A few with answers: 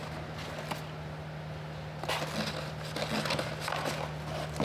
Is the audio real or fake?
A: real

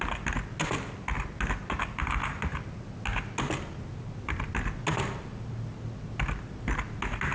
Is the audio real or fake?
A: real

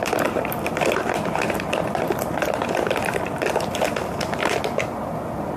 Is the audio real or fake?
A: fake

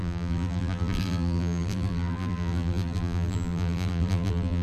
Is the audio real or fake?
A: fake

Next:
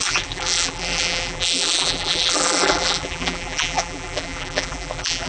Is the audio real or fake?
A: fake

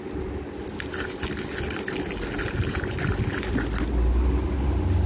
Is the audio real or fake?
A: real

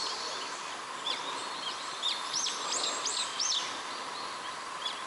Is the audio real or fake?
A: fake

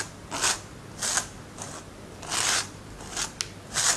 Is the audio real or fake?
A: real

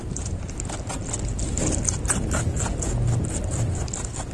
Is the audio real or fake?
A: real